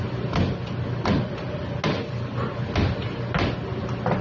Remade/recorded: recorded